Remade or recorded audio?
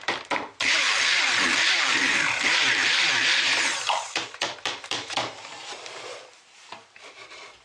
remade